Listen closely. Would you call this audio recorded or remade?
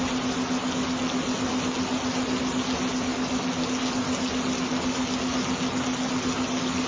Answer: recorded